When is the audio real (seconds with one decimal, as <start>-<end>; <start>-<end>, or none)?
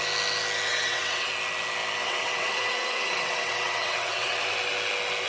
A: 0.0-0.7; 1.3-2.0; 4.4-5.3